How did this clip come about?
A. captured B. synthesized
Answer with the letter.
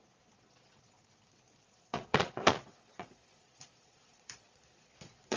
B